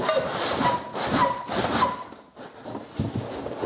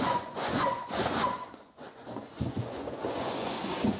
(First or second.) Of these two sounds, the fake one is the second